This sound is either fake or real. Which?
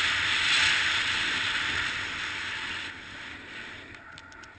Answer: real